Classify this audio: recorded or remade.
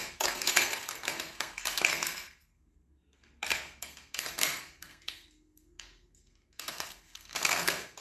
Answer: remade